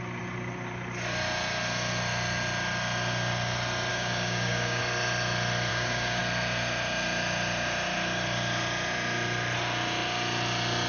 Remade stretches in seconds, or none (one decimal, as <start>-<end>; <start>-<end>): 3.9-4.8; 5.7-6.2